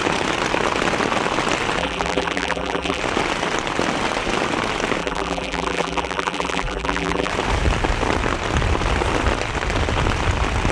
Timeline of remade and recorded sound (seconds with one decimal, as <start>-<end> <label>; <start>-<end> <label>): 0.0-1.8 recorded; 1.8-3.0 remade; 3.0-5.0 recorded; 5.0-7.3 remade; 7.3-10.7 recorded